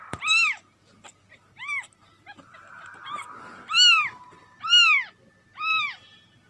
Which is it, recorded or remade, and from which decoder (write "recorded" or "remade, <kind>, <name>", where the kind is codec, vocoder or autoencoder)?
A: recorded